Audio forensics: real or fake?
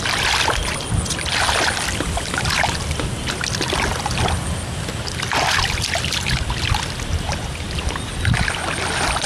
real